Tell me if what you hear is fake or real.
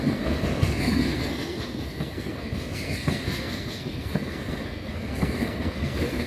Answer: fake